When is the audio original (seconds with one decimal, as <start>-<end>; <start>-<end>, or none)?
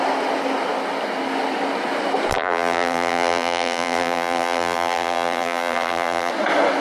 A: 0.0-2.3; 6.3-6.8